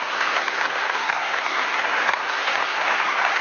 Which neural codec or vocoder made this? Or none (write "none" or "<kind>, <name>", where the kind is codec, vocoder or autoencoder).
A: codec, SNAC